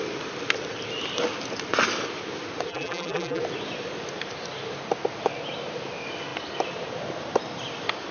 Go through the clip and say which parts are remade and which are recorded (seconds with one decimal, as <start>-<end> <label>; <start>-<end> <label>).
0.0-2.7 recorded; 2.7-3.4 remade; 3.4-8.1 recorded

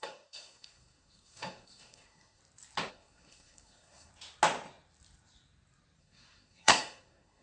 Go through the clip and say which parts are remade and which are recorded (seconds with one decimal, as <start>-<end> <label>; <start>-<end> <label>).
0.0-2.4 remade; 2.4-2.9 recorded; 2.9-4.1 remade; 4.1-6.0 recorded; 6.0-7.4 remade

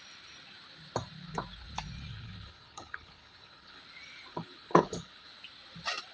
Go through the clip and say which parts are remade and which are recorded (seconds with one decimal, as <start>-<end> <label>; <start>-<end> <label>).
0.0-2.1 recorded; 2.1-3.8 remade; 3.8-4.3 recorded; 4.3-5.3 remade; 5.3-6.1 recorded

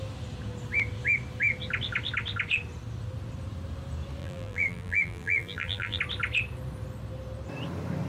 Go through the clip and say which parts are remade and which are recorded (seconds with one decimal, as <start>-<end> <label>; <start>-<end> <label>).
0.0-4.2 recorded; 4.2-6.0 remade; 6.0-8.1 recorded

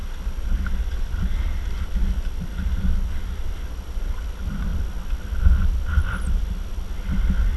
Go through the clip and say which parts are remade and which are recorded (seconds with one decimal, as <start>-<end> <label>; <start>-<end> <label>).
0.0-7.6 recorded

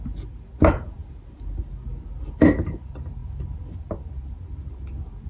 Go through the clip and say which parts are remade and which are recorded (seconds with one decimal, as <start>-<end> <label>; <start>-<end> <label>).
0.0-5.3 recorded